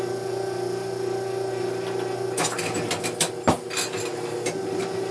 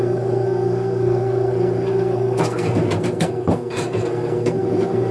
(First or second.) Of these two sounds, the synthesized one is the second